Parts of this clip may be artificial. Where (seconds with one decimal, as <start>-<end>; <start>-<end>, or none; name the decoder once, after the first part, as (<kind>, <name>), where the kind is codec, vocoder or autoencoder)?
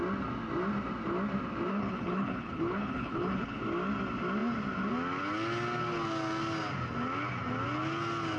1.7-3.6 (codec, HILCodec)